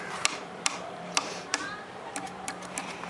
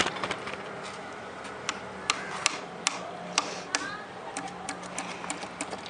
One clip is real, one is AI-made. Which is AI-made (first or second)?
first